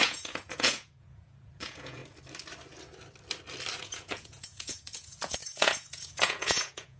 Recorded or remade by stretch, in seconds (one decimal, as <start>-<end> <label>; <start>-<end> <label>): 0.0-2.0 remade; 2.0-3.8 recorded; 3.8-7.0 remade